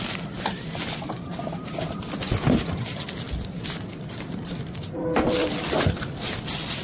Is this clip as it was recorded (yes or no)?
yes